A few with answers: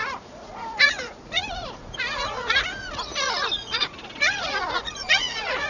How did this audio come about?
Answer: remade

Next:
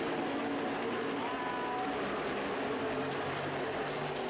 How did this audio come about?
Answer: recorded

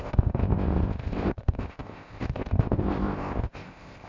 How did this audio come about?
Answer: remade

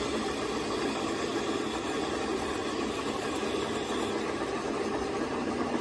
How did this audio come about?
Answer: recorded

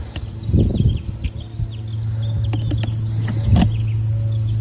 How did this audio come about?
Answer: recorded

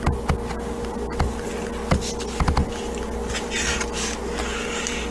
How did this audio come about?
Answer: recorded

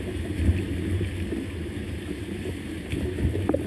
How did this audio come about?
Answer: recorded